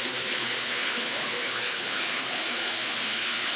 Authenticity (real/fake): fake